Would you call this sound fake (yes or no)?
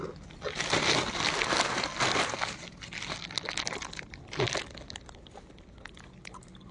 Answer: no